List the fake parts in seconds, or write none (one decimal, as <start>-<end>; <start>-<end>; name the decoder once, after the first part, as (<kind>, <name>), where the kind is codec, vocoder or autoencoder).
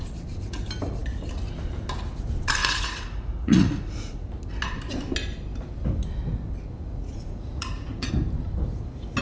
2.6-4.3 (vocoder, Vocos); 6.9-8.1